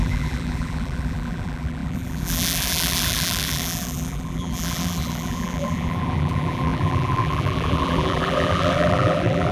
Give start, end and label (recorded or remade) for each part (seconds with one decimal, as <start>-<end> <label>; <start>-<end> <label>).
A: 0.0-9.5 remade